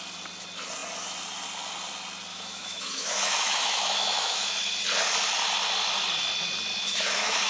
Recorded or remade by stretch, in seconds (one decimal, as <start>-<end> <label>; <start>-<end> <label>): 0.0-2.3 recorded; 2.3-4.6 remade; 4.6-6.7 recorded; 6.7-7.5 remade